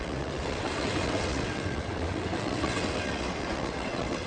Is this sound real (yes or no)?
no